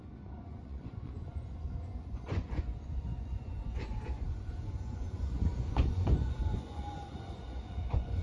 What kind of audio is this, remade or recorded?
remade